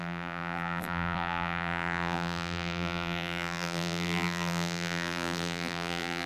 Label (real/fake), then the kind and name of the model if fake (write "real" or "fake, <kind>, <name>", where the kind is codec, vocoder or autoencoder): fake, vocoder, BigVGAN v2